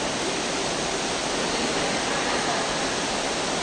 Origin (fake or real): real